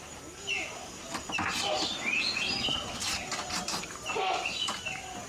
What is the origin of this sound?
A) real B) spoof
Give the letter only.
A